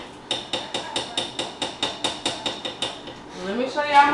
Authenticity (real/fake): real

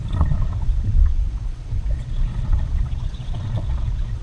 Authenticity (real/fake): fake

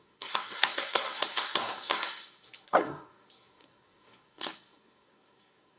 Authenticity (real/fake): fake